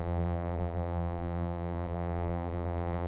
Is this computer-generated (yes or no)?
yes